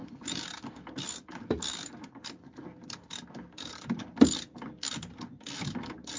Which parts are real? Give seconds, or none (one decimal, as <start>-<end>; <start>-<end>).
0.0-6.2